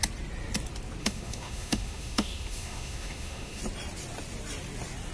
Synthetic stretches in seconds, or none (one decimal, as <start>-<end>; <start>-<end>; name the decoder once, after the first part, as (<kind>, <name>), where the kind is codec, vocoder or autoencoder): 1.0-3.6 (autoencoder, DAC-VAE)